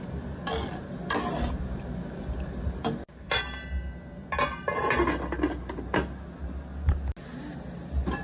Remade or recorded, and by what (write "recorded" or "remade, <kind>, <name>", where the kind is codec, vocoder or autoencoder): recorded